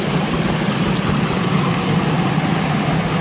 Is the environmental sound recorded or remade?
recorded